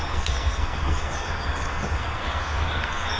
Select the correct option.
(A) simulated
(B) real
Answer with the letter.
A